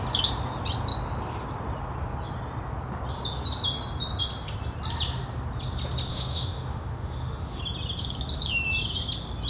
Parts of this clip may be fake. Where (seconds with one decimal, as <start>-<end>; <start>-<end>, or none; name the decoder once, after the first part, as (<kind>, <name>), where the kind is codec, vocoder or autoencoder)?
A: 6.1-7.6 (autoencoder, DAC-VAE)